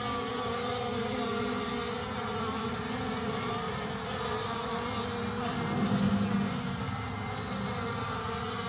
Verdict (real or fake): real